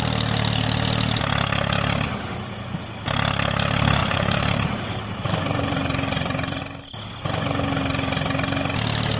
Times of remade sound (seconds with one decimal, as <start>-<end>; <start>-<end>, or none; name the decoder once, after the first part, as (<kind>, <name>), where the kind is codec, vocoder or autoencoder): 4.0-6.6 (vocoder, BigVGAN v2)